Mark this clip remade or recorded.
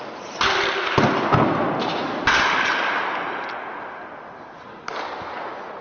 recorded